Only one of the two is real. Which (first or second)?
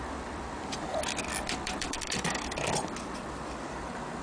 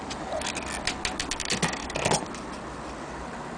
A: second